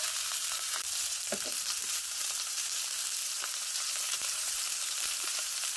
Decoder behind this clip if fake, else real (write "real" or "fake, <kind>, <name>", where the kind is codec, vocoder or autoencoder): fake, vocoder, BigVGAN v2